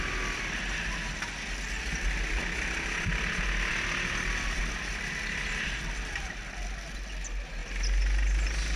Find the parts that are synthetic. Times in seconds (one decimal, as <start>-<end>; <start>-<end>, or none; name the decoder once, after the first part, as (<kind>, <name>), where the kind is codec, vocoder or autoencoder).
none